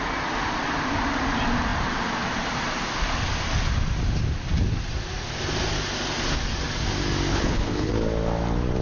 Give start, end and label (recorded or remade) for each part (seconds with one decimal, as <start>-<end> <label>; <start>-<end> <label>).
0.0-7.3 recorded; 7.3-7.9 remade; 7.9-8.8 recorded